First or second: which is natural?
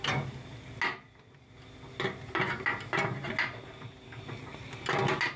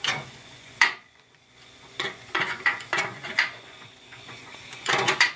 first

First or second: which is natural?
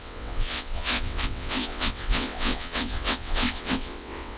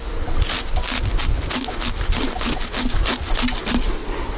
second